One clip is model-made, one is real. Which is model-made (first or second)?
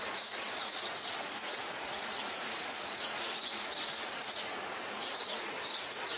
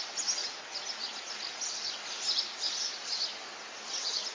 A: first